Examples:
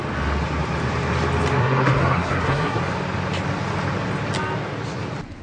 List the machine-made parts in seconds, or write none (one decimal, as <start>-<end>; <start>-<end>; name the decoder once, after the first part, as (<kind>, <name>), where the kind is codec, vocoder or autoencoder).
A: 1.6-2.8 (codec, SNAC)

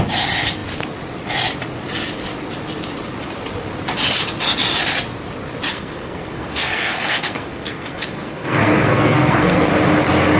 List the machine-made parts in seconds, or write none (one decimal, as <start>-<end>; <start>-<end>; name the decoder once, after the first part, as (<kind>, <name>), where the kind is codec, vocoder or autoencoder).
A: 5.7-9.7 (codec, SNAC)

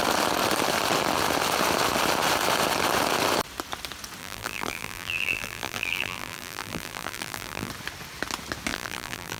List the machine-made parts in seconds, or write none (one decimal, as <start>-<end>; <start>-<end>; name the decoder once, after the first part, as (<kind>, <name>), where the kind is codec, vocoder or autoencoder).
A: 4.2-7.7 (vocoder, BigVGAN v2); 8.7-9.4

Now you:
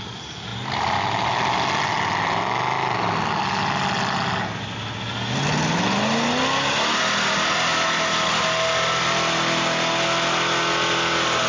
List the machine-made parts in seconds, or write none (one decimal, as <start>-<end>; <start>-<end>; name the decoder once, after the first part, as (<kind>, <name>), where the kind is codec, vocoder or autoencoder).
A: none

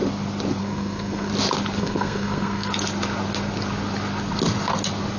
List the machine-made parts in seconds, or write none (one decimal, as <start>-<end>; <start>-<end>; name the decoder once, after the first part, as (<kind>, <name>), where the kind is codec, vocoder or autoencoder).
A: 0.6-1.3 (codec, SNAC); 1.8-2.7

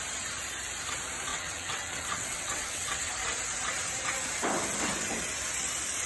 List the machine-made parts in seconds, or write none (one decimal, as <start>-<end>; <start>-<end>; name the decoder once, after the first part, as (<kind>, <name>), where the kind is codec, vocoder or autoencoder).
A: 1.3-3.1 (vocoder, WaveNeXt)

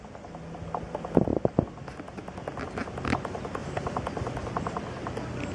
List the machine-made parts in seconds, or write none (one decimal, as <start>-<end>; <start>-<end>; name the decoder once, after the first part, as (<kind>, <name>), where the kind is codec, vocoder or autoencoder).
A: none